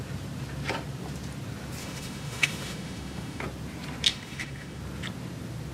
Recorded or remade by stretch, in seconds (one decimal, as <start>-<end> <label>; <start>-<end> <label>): 0.0-1.8 recorded; 1.8-3.4 remade; 3.4-4.1 recorded; 4.1-4.8 remade; 4.8-5.7 recorded